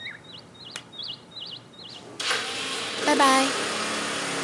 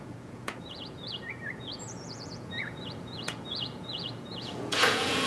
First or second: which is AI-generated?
second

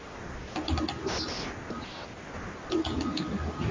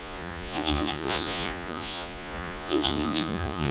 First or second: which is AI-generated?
second